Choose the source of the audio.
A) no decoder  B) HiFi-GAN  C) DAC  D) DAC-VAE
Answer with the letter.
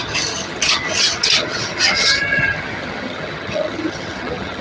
B